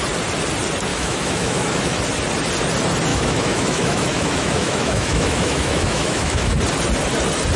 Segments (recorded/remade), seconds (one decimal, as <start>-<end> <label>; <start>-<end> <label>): 0.0-0.9 recorded; 0.9-2.0 remade; 2.0-3.1 recorded; 3.1-6.5 remade; 6.5-7.6 recorded